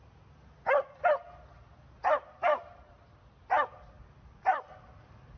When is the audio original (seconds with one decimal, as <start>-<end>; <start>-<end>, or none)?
0.0-2.0; 3.1-5.4